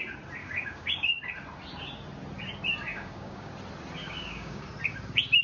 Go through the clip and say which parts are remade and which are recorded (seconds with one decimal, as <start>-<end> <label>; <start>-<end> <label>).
0.0-0.4 recorded; 0.4-1.3 remade; 1.3-2.9 recorded; 2.9-3.5 remade; 3.5-4.0 recorded; 4.0-4.6 remade; 4.6-5.4 recorded